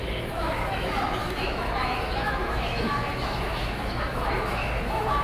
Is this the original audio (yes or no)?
no